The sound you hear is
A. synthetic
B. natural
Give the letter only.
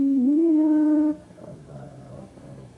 A